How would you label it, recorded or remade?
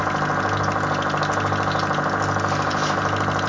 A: recorded